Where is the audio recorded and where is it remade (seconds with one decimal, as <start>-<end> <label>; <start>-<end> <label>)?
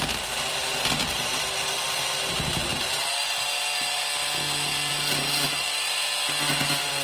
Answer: 0.0-7.0 recorded